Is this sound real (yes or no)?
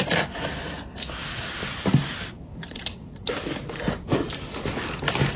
yes